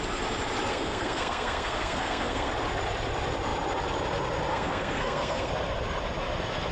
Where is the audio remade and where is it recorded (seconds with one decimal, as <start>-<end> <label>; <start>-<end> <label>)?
0.0-0.7 recorded; 0.7-2.5 remade; 2.5-4.5 recorded; 4.5-5.5 remade; 5.5-6.7 recorded